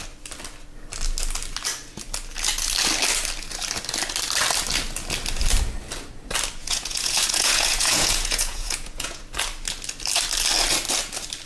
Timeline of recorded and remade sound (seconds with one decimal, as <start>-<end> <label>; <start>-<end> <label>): 0.0-6.6 recorded; 6.6-9.2 remade; 9.2-11.5 recorded